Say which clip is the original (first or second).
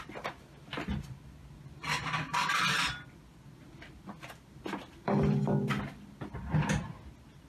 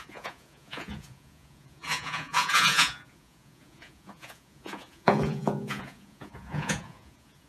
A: first